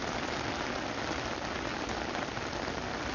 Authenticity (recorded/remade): recorded